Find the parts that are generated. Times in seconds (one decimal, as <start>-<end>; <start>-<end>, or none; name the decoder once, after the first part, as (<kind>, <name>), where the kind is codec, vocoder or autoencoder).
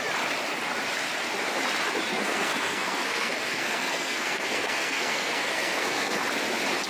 2.1-6.2 (codec, SNAC)